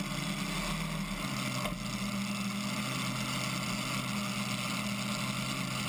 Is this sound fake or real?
real